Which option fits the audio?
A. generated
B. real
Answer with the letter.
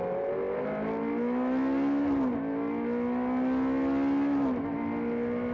B